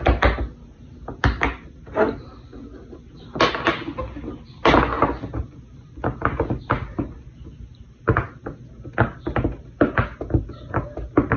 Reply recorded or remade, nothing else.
recorded